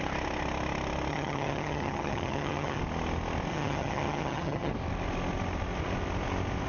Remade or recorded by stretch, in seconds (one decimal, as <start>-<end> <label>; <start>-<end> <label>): 0.0-1.1 recorded; 1.1-2.8 remade; 2.8-3.5 recorded; 3.5-4.7 remade; 4.7-6.7 recorded